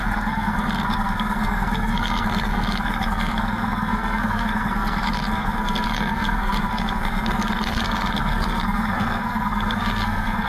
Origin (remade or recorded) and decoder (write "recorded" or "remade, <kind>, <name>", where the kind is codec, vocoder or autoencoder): remade, codec, SNAC